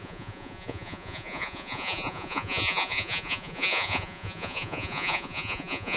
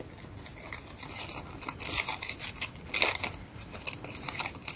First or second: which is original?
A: second